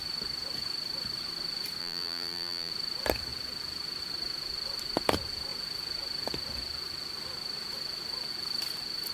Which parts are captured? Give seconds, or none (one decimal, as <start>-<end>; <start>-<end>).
0.0-1.8; 2.7-9.1